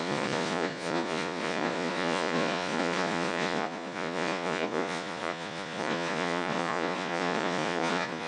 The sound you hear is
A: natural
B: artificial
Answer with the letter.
B